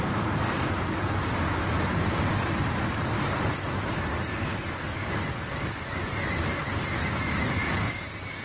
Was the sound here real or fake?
real